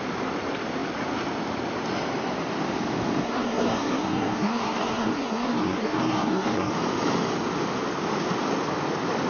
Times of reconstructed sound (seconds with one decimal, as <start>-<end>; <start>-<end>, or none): 3.2-6.7